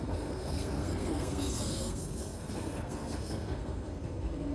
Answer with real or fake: fake